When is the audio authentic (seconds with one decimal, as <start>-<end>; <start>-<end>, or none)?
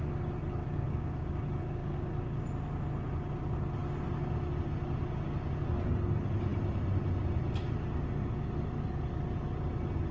0.0-0.6; 1.4-1.8; 2.4-10.1